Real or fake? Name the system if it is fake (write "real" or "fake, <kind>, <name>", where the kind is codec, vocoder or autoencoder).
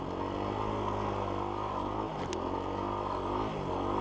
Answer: real